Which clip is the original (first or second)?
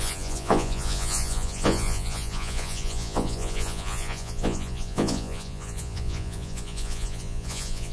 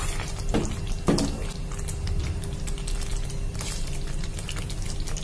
second